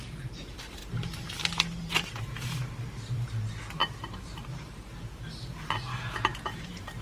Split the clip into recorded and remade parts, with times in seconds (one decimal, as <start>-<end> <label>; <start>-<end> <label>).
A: 0.0-0.8 recorded; 0.8-3.3 remade; 3.3-3.8 recorded; 3.8-4.8 remade; 4.8-6.3 recorded; 6.3-7.0 remade